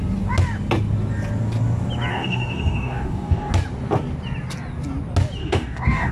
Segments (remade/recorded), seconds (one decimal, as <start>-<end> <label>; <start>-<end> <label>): 0.0-2.1 recorded; 2.1-3.5 remade; 3.5-5.4 recorded; 5.4-6.1 remade